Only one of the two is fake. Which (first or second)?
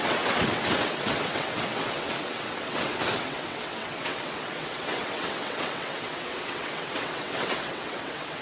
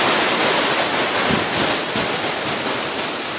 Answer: first